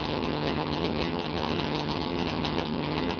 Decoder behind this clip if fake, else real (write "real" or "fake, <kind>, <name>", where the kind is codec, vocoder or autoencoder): fake, vocoder, HiFi-GAN